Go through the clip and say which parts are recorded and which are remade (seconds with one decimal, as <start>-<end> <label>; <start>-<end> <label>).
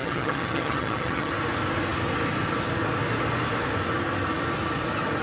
0.0-1.3 remade; 1.3-5.2 recorded